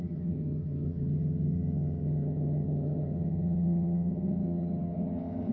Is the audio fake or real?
fake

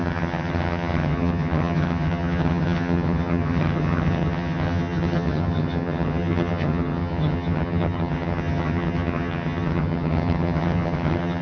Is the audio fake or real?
fake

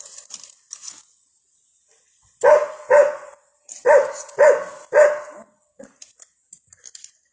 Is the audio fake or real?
real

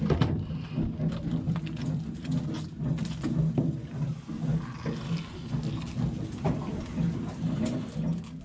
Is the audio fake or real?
real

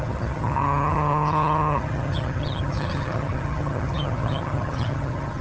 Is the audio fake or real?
fake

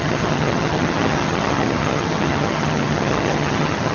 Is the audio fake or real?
fake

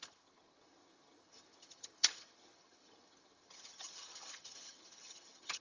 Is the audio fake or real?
fake